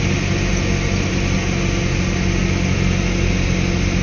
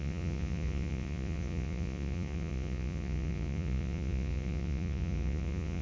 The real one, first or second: first